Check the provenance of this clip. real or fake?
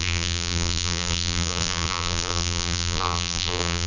fake